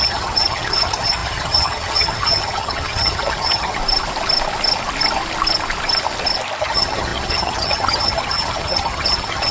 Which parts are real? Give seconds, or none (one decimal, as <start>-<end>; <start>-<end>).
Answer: 3.8-6.6